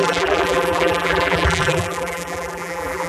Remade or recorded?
remade